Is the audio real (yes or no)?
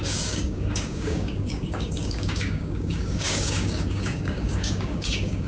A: no